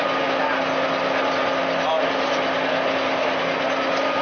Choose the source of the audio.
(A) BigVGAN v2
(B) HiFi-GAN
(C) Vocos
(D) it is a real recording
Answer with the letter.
D